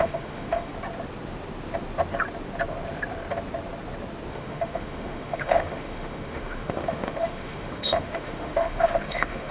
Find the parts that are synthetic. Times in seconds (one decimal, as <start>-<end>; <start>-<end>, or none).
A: 0.0-0.7; 4.3-9.5